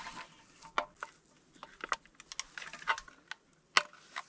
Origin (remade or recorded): recorded